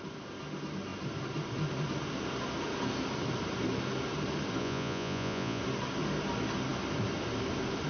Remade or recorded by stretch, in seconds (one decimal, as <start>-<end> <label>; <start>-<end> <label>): 0.0-4.6 recorded; 4.6-5.6 remade; 5.6-7.9 recorded